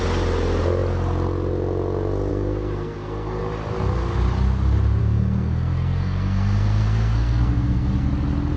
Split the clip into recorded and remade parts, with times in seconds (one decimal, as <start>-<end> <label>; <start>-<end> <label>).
0.0-2.3 recorded; 2.3-3.4 remade; 3.4-5.0 recorded; 5.0-8.1 remade; 8.1-8.6 recorded